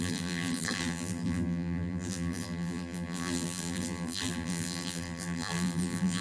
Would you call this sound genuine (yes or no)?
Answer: no